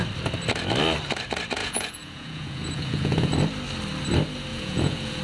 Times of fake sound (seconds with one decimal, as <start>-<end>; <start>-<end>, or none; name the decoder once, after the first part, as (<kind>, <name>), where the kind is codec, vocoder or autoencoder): 1.6-3.3 (vocoder, Vocos); 4.5-5.2

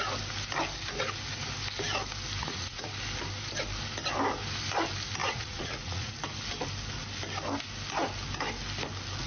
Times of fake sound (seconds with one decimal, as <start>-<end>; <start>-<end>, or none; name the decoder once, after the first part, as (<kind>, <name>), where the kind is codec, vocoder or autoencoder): 2.4-2.9 (vocoder, Vocos); 5.2-6.1

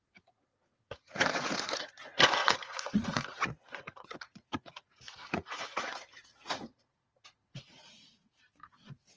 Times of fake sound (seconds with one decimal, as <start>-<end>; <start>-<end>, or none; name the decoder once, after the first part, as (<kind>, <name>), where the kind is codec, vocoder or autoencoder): 0.0-9.2 (vocoder, Vocos)